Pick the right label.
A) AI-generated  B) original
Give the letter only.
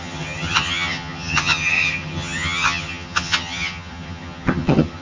A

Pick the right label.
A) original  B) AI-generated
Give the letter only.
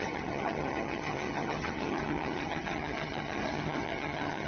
B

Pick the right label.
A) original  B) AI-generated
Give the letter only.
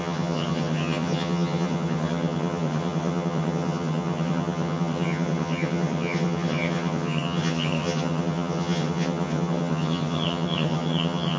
B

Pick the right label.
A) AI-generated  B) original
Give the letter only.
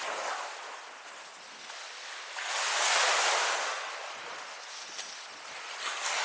B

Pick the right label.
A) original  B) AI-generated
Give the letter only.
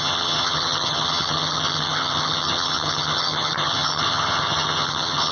B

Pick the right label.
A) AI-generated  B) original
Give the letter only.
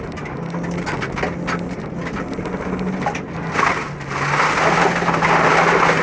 B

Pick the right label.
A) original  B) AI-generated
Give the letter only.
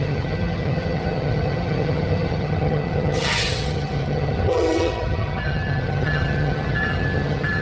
B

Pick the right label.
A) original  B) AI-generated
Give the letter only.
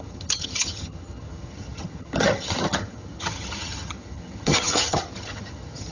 B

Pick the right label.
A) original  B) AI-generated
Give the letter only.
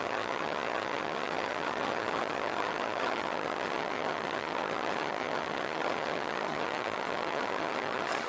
B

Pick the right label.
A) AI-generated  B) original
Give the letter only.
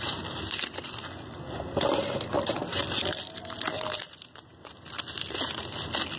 B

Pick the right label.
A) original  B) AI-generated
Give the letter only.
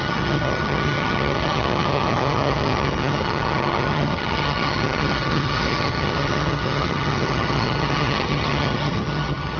B